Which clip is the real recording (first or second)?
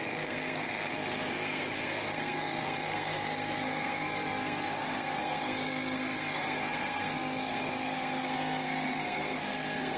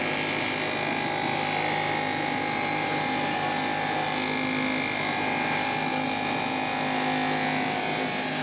second